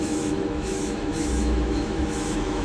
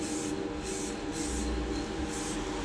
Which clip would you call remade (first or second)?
first